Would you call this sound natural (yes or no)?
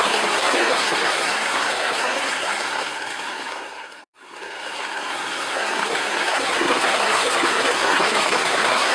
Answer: no